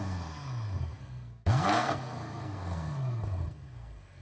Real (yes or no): no